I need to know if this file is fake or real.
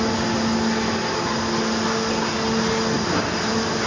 real